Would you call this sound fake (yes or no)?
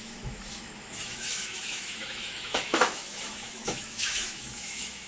yes